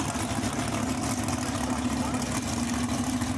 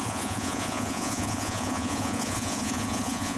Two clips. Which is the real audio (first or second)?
first